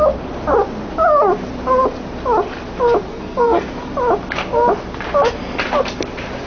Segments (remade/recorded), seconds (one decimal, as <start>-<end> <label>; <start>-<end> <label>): 0.0-3.1 recorded; 3.1-3.7 remade; 3.7-6.5 recorded